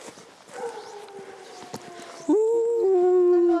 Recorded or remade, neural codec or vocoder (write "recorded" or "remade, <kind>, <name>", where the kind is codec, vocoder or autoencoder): recorded